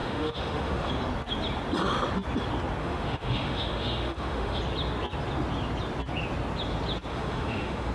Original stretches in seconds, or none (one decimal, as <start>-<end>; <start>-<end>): 0.9-2.8; 4.6-7.1